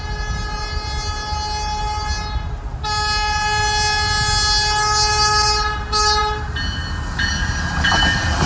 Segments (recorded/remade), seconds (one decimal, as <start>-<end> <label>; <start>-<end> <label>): 0.0-8.5 recorded